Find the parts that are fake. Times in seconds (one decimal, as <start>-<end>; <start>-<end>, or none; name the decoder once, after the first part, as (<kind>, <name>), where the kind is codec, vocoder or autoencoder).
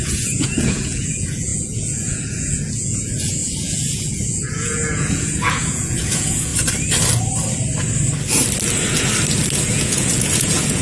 0.0-6.5 (vocoder, Vocos); 9.7-10.8